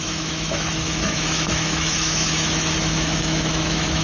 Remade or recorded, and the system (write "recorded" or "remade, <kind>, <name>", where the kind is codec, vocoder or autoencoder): remade, autoencoder, DAC-VAE